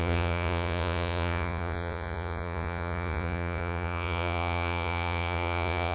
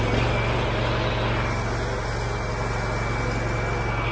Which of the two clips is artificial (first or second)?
first